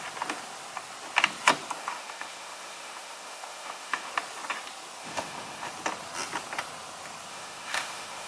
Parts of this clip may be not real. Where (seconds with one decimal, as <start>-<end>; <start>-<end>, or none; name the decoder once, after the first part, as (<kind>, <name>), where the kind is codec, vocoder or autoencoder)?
1.8-4.1 (autoencoder, DAC-VAE); 5.0-5.7; 7.3-8.3